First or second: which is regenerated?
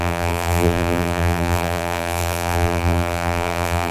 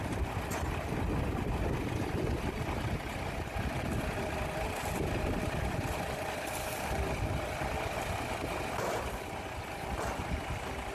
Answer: first